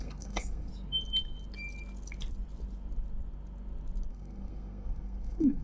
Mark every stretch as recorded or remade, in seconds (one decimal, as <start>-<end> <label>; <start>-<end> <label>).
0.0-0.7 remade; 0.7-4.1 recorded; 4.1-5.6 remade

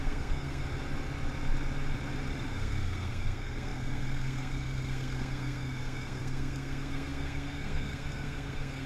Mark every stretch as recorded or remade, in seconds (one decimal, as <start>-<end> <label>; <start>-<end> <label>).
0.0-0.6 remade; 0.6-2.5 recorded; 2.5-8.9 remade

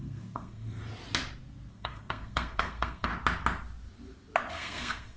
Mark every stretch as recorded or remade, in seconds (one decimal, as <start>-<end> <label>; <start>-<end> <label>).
0.0-0.8 remade; 0.8-1.7 recorded; 1.7-3.1 remade; 3.1-4.5 recorded; 4.5-5.2 remade

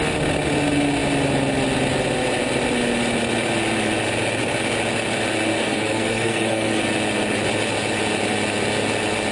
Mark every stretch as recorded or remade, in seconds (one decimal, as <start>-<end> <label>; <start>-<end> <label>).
0.0-5.5 recorded; 5.5-6.8 remade; 6.8-9.3 recorded